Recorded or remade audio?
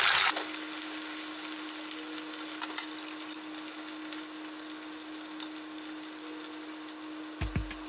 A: recorded